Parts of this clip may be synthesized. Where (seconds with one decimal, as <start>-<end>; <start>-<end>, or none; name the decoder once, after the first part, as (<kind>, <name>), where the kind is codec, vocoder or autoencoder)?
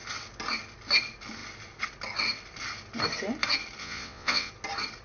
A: 3.8-4.5 (vocoder, WaveNeXt)